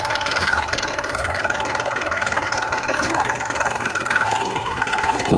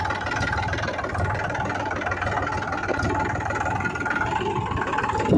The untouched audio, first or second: second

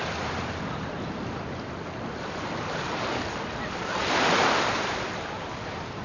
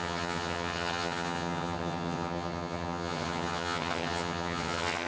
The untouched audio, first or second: first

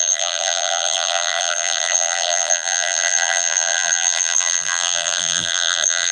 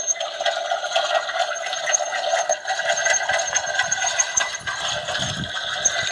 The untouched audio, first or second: second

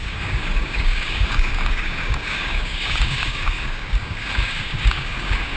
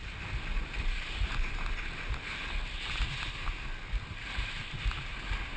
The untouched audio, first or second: second